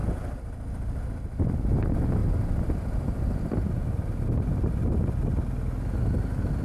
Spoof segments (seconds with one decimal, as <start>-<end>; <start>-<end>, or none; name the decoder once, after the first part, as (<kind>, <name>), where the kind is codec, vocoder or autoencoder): none